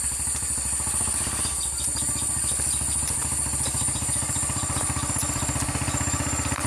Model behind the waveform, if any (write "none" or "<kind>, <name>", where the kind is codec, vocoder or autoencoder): none